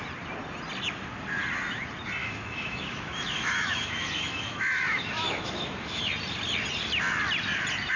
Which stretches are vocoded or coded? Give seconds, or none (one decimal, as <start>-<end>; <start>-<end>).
2.2-6.0